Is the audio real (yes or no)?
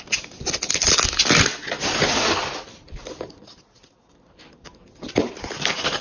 yes